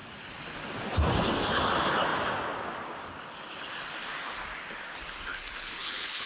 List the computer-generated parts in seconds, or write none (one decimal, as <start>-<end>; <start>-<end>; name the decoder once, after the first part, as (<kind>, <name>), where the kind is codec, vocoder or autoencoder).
5.3-6.3 (codec, HILCodec)